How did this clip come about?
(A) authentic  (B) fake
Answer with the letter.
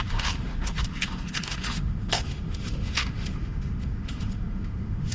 B